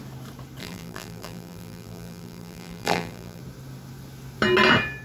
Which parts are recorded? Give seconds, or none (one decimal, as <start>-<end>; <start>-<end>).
0.0-0.6; 3.4-5.0